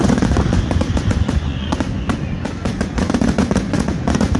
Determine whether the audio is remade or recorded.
remade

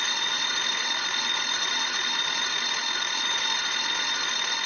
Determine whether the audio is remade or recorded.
remade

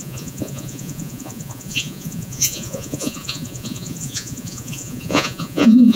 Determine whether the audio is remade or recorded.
remade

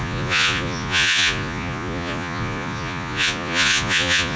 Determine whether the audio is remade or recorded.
remade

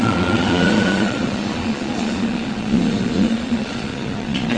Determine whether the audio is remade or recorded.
remade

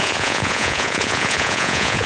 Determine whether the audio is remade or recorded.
remade